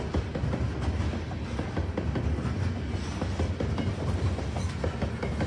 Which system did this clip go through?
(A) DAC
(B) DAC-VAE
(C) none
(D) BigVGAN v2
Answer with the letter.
C